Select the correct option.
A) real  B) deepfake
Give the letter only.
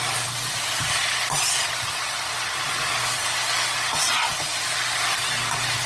A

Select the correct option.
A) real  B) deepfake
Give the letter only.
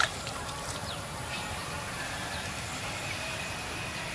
B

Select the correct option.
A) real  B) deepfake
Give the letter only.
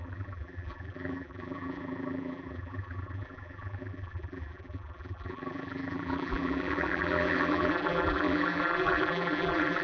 B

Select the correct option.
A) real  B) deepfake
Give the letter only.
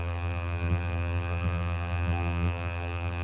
B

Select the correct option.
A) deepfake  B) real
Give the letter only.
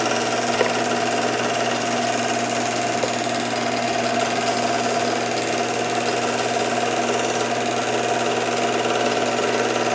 B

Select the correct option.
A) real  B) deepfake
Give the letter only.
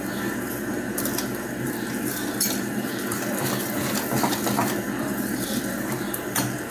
B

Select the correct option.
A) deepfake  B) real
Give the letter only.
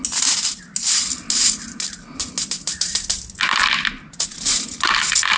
B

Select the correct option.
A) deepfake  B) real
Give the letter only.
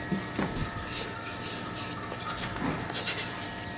A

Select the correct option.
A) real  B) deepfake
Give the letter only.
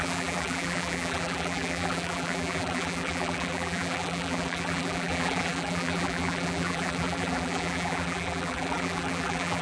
B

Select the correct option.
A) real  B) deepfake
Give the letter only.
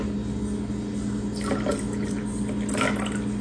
A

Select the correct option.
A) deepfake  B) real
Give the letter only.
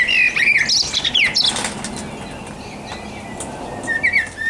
B